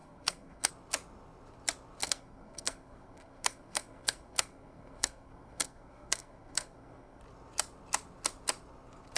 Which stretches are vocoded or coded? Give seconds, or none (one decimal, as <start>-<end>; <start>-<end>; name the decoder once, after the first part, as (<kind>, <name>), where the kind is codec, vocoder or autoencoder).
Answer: 0.0-0.7 (codec, SNAC); 2.0-7.2